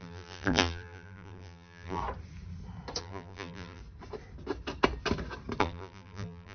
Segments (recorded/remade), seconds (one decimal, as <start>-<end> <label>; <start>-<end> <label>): 0.0-2.0 remade; 2.0-3.0 recorded; 3.0-3.8 remade; 3.8-5.6 recorded; 5.6-6.5 remade